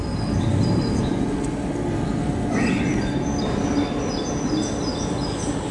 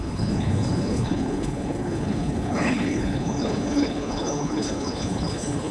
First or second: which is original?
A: first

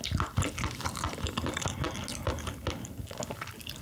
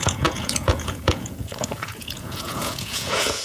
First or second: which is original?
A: first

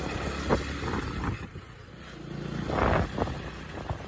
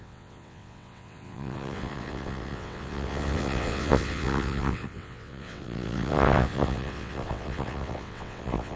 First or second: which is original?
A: first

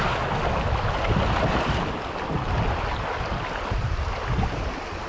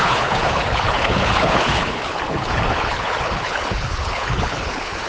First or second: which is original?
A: first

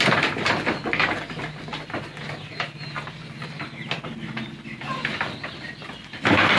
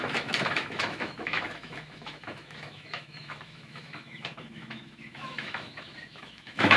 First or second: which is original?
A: first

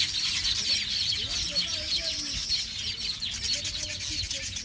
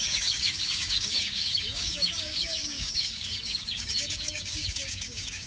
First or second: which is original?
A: first